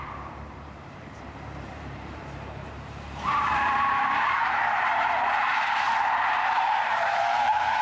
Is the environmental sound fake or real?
fake